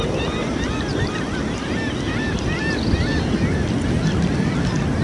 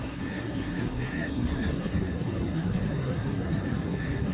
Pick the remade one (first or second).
second